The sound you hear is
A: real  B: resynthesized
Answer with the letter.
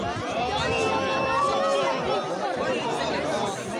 A